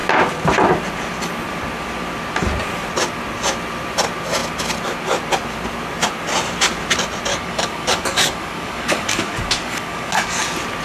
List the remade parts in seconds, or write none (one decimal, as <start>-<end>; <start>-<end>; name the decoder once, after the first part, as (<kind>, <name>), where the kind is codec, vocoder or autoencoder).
7.3-10.4 (codec, DAC)